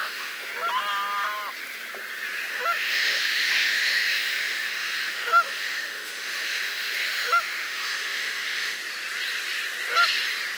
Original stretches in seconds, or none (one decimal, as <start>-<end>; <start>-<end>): 0.5-2.5; 8.8-10.6